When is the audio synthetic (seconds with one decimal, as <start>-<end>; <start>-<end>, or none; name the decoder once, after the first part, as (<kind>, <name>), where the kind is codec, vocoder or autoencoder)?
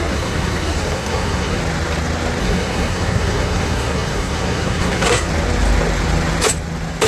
0.0-1.6 (codec, SNAC); 2.4-5.3